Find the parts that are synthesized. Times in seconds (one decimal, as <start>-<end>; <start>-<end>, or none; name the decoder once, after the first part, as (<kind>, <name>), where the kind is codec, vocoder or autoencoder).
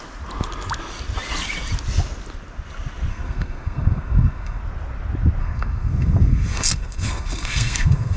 3.1-4.6 (codec, SNAC); 5.4-8.2